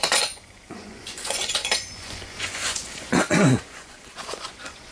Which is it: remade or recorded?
remade